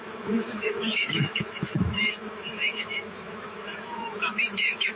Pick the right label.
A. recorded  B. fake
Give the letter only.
B